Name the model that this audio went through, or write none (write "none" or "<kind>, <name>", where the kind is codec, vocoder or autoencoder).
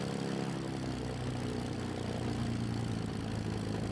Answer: none